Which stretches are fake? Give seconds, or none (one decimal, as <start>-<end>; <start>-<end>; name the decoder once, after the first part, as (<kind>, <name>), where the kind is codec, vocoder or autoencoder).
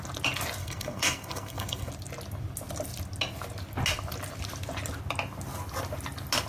0.6-1.9 (codec, SNAC)